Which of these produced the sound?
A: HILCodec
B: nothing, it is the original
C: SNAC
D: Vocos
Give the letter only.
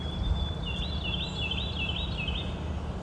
B